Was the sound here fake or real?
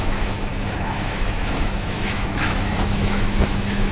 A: fake